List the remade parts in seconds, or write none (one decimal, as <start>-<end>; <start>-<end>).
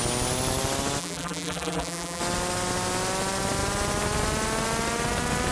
1.0-2.2